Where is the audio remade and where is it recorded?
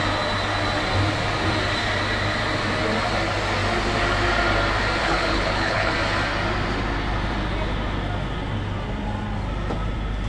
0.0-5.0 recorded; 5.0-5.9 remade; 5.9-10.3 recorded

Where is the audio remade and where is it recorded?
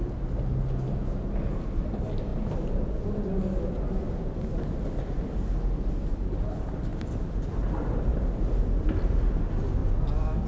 0.0-10.5 recorded